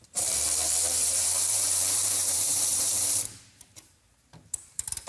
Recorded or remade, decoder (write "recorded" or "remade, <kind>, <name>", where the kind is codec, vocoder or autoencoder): remade, vocoder, BigVGAN v2